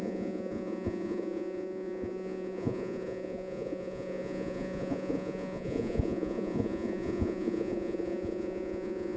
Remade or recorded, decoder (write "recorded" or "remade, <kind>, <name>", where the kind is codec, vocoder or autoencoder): remade, vocoder, Vocos